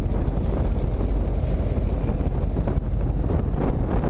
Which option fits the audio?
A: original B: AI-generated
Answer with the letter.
A